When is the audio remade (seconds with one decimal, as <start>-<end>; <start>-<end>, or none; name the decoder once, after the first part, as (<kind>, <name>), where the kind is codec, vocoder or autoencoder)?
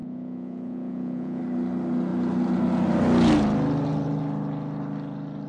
0.0-1.4 (vocoder, Vocos)